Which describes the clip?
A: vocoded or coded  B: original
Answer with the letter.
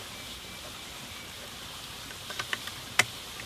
B